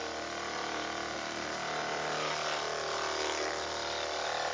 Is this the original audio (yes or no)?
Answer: yes